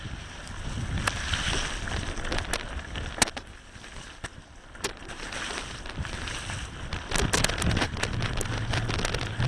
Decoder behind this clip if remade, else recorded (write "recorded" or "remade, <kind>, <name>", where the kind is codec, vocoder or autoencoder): recorded